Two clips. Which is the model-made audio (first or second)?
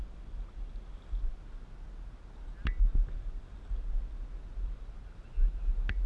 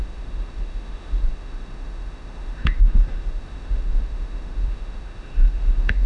second